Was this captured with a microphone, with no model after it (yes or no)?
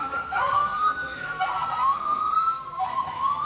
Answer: no